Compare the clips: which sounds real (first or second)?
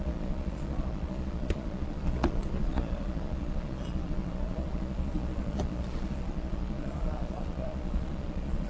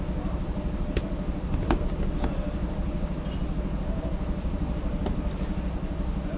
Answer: second